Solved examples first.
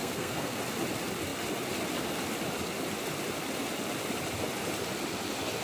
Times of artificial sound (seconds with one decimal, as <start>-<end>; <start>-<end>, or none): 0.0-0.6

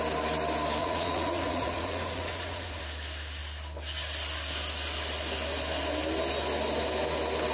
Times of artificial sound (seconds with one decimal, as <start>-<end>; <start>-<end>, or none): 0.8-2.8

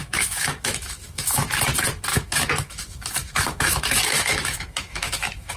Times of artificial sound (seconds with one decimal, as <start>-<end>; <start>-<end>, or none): 0.0-1.4; 2.1-5.6

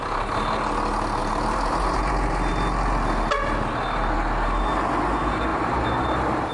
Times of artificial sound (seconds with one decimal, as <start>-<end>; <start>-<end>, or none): 1.2-2.5; 5.5-6.5

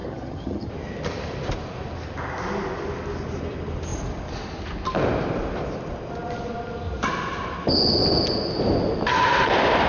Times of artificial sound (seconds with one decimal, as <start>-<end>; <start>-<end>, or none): 0.0-0.7

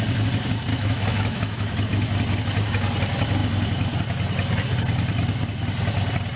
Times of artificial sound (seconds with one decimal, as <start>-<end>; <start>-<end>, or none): 0.7-1.9

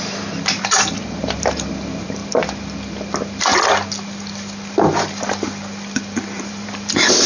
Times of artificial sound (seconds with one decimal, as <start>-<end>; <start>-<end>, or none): 0.0-2.2; 6.4-7.3